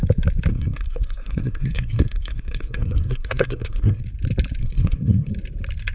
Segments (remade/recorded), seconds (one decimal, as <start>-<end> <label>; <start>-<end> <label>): 0.0-0.5 recorded; 0.5-4.0 remade; 4.0-4.6 recorded; 4.6-5.3 remade; 5.3-5.9 recorded